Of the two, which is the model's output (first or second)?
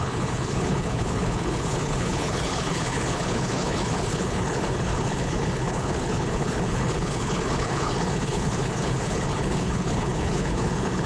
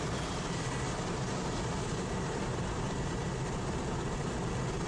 first